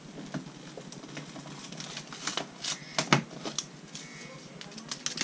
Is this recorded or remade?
recorded